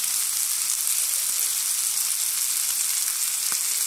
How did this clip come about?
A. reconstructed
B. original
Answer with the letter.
B